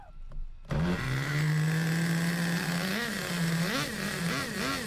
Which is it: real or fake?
real